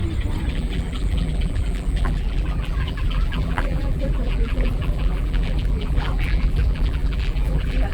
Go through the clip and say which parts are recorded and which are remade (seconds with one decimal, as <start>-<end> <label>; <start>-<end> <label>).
0.0-0.5 recorded; 0.5-7.9 remade